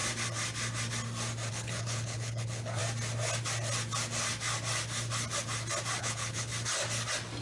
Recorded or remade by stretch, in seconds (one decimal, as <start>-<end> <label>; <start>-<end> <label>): 0.0-1.5 recorded; 1.5-2.8 remade; 2.8-6.0 recorded; 6.0-6.5 remade; 6.5-7.4 recorded